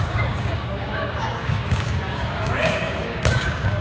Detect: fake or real fake